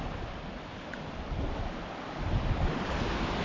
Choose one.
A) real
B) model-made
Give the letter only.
A